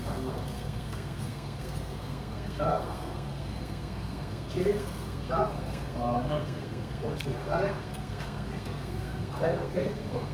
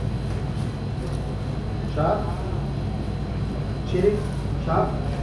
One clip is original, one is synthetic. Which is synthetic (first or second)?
first